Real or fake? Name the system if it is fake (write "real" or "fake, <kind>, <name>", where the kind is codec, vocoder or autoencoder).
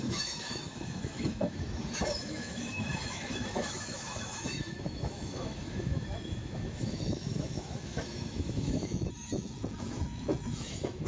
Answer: fake, autoencoder, DAC-VAE